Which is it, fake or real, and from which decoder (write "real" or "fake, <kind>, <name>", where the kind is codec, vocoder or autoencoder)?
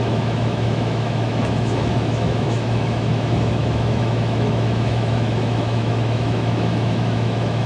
fake, autoencoder, DAC-VAE